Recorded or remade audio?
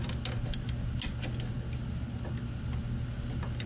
recorded